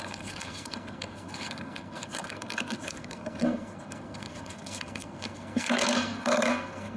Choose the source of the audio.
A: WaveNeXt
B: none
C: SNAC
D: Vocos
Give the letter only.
C